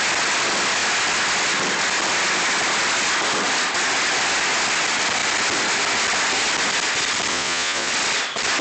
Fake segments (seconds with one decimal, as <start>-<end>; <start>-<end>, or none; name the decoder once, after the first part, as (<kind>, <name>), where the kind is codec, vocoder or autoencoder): 7.3-7.9 (vocoder, Vocos)